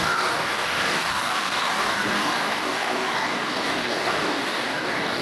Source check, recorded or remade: remade